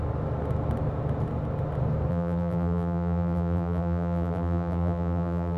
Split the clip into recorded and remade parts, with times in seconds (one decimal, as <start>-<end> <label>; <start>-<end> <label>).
0.0-2.1 recorded; 2.1-5.6 remade